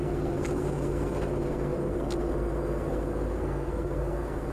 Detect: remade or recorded remade